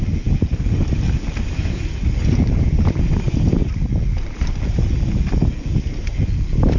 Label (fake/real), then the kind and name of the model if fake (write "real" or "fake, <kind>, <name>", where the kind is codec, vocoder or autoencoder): real